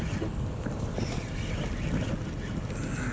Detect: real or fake real